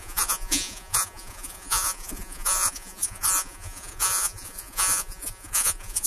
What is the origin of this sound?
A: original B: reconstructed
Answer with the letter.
B